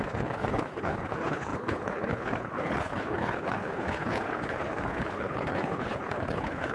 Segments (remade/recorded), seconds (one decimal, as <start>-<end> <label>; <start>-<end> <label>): 0.0-6.7 remade